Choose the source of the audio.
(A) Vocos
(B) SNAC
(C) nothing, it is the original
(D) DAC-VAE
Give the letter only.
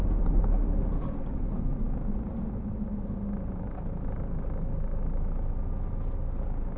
C